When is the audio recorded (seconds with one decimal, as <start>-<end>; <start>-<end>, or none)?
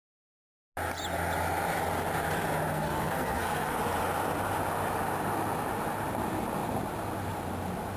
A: 0.0-2.7; 3.8-8.0